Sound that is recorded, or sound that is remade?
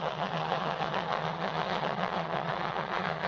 remade